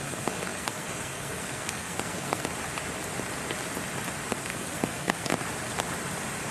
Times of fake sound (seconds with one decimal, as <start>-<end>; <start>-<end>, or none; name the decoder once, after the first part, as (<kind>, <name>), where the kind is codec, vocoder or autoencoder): 0.0-2.5 (codec, SNAC); 4.4-5.3